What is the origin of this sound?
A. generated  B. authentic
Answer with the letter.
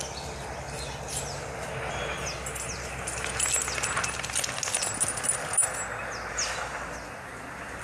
B